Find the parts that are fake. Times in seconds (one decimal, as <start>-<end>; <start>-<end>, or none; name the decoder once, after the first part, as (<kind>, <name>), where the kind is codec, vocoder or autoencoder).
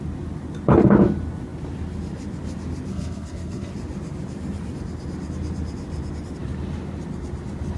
2.9-3.7 (codec, SNAC)